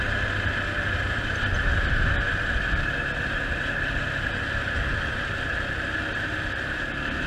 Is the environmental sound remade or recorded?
recorded